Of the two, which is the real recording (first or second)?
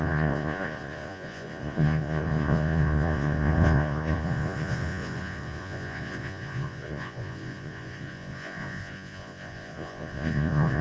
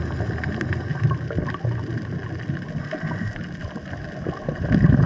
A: second